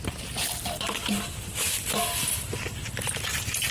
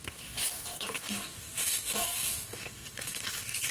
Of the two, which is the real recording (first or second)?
first